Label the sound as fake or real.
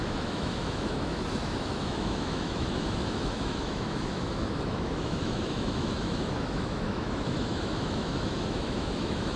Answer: fake